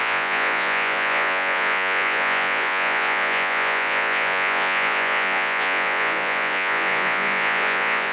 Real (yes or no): no